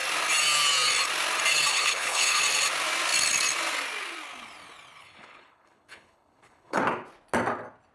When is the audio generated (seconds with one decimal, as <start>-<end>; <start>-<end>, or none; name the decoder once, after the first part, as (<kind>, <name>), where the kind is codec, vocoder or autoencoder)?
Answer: 1.7-2.4 (codec, HILCodec); 5.0-6.8